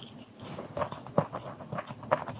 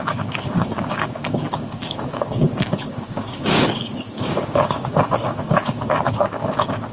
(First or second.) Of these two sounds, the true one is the first